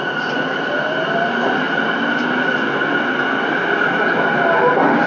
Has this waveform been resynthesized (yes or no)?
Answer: no